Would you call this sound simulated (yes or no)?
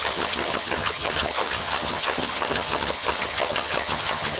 yes